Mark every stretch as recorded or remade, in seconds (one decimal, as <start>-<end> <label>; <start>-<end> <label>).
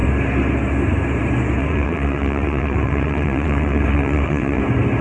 0.0-1.6 recorded; 1.6-4.6 remade; 4.6-5.0 recorded